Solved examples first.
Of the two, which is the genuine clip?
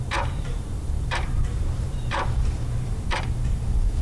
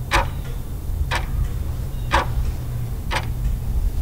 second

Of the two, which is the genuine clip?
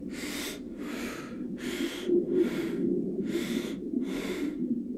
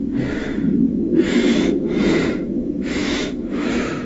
first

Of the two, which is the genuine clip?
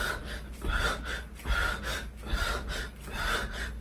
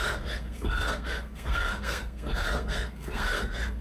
first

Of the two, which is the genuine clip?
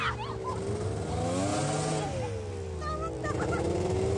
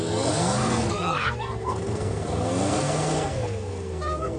first